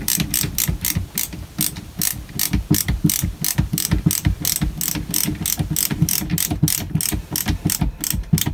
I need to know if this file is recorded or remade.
recorded